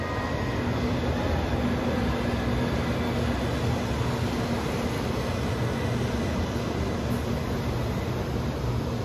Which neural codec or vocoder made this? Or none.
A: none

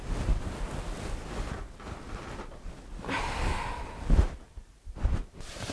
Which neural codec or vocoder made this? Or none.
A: none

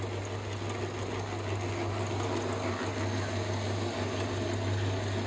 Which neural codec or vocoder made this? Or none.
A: none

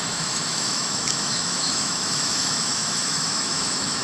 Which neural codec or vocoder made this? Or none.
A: autoencoder, DAC-VAE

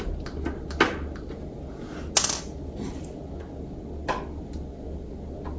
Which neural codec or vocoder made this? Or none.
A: none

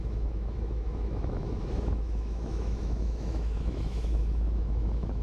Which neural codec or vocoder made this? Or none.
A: autoencoder, DAC-VAE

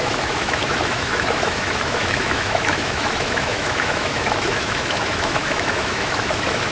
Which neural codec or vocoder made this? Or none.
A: autoencoder, DAC-VAE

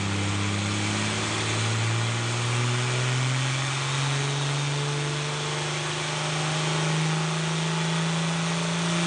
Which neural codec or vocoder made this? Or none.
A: none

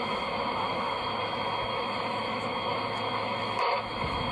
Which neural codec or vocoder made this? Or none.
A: autoencoder, DAC-VAE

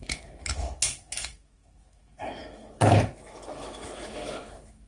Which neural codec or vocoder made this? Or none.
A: autoencoder, DAC-VAE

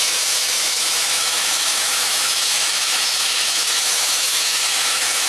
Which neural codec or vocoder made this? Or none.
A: autoencoder, DAC-VAE